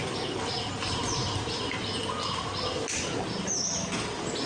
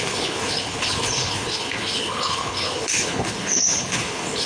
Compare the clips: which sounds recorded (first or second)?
first